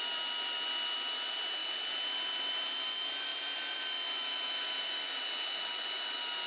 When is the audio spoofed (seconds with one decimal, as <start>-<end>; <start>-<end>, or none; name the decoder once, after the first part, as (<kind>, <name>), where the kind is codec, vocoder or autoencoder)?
none